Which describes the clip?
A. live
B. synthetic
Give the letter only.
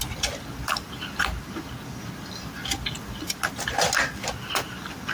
A